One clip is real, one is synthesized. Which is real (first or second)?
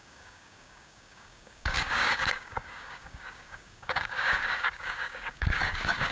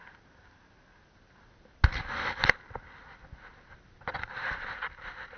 second